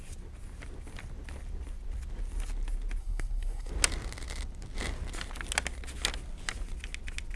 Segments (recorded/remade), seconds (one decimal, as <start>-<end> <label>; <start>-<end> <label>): 0.0-3.0 recorded; 3.0-3.7 remade; 3.7-7.4 recorded

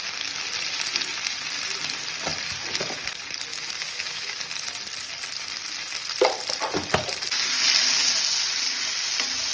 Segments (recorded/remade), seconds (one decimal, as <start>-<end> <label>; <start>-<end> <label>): 0.0-3.5 recorded; 3.5-4.4 remade; 4.4-9.5 recorded

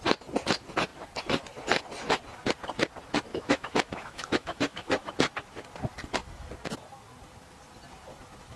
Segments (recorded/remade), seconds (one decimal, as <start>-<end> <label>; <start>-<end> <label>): 0.0-3.3 recorded; 3.3-5.1 remade; 5.1-8.6 recorded

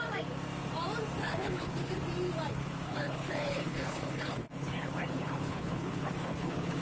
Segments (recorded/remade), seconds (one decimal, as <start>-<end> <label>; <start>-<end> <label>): 0.0-1.2 recorded; 1.2-1.9 remade; 1.9-2.5 recorded; 2.5-6.8 remade